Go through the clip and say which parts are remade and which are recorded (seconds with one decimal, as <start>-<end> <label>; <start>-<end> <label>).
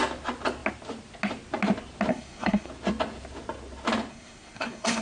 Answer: 0.0-2.1 recorded; 2.1-2.7 remade; 2.7-4.1 recorded; 4.1-5.0 remade